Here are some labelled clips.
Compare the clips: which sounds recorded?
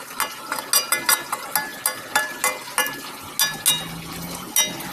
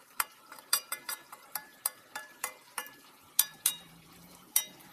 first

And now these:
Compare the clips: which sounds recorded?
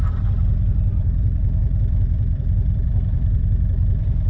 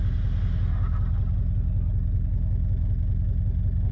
second